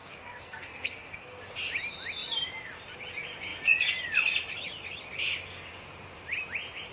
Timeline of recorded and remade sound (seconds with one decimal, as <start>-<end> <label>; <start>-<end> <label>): 0.0-1.4 remade; 1.4-6.9 recorded